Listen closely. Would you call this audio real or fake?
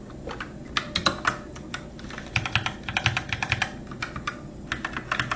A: real